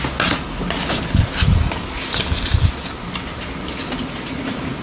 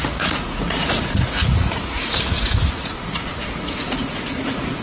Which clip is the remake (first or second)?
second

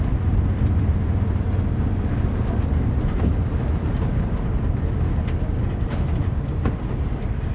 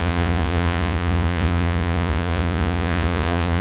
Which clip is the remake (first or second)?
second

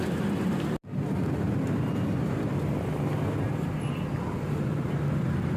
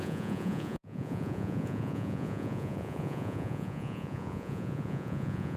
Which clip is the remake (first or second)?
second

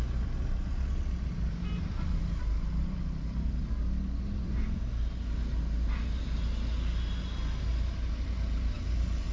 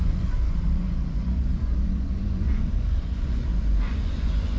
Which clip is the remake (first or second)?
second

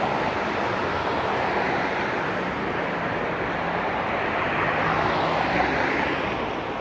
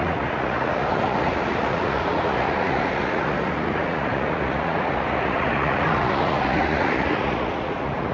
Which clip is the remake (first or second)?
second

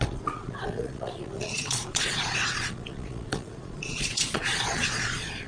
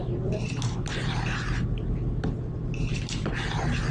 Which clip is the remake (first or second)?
first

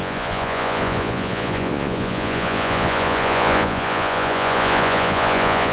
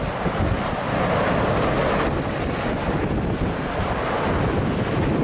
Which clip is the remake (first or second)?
first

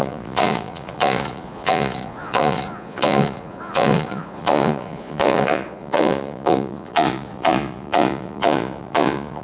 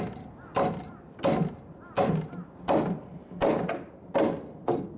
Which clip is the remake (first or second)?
first